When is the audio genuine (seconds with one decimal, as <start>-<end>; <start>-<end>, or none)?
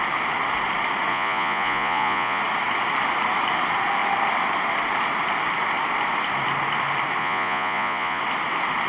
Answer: 0.0-1.1; 2.4-7.2; 8.2-8.9